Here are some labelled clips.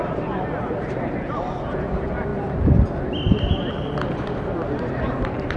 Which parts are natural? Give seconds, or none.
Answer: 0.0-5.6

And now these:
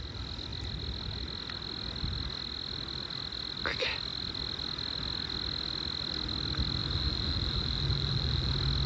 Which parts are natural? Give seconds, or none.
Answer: 0.0-6.8; 8.5-8.9

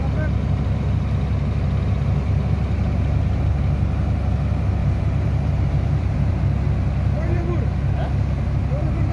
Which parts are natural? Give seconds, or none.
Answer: 0.0-4.8; 6.4-9.1

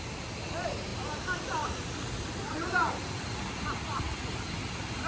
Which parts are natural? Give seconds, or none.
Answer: 0.0-0.9; 4.0-5.1